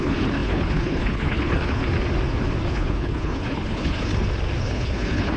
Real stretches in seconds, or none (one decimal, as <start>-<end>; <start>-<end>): 1.8-2.7; 4.1-4.6